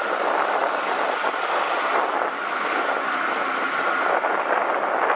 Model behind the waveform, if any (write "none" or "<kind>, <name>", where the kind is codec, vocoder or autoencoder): none